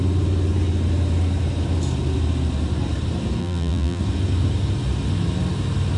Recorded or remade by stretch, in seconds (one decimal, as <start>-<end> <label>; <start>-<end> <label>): 0.0-3.4 recorded; 3.4-4.0 remade; 4.0-6.0 recorded